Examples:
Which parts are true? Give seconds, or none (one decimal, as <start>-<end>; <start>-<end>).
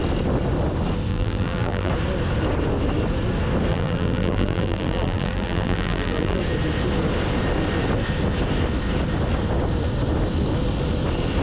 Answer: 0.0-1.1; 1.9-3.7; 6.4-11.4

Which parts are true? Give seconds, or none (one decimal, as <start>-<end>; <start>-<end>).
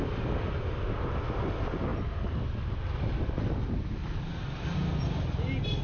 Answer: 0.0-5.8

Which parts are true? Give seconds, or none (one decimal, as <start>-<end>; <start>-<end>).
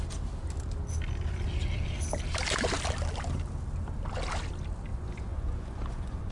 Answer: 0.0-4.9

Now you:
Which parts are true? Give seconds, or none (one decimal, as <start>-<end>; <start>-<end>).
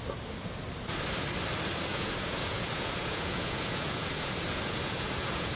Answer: 0.0-1.9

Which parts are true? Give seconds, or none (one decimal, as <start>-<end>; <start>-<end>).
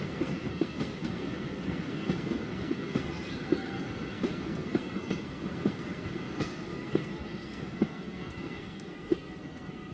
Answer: none